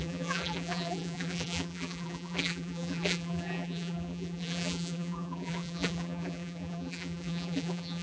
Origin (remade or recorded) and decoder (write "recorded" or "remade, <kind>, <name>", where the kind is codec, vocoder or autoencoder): remade, vocoder, BigVGAN v2